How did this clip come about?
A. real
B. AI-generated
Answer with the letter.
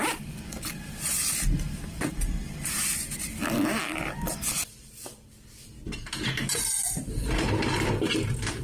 A